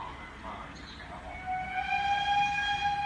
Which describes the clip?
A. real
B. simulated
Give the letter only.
A